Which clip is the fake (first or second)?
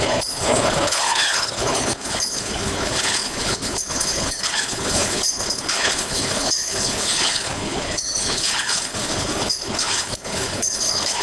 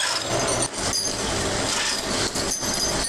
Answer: first